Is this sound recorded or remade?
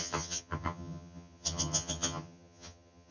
remade